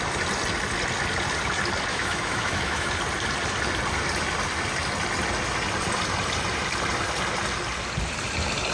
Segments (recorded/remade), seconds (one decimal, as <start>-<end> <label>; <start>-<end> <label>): 0.0-1.9 recorded; 1.9-2.9 remade; 2.9-8.7 recorded